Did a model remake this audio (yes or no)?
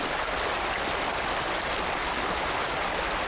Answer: no